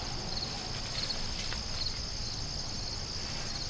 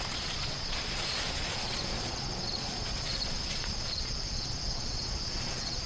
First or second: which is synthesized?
second